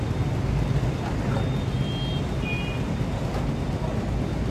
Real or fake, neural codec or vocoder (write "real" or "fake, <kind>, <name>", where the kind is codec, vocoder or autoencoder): real